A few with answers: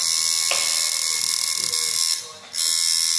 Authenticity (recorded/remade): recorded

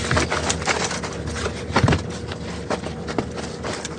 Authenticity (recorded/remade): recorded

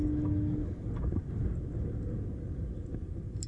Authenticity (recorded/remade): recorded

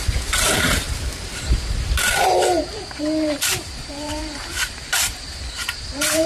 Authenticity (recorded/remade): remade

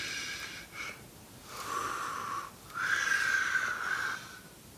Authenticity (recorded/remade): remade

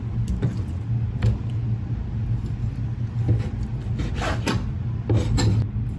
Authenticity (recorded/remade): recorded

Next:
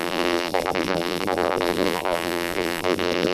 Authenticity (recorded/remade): remade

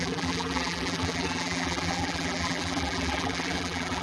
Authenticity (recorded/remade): remade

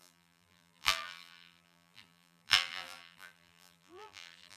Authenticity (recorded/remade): remade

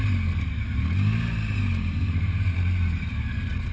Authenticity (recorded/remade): recorded